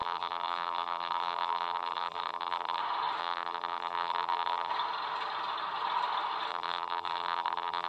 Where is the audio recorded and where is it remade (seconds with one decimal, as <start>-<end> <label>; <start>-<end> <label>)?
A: 0.0-2.8 remade; 2.8-3.2 recorded; 3.2-4.7 remade; 4.7-6.5 recorded; 6.5-7.9 remade